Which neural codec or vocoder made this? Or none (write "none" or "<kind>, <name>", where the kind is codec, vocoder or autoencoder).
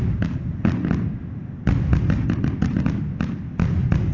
none